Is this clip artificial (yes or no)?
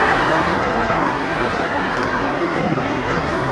yes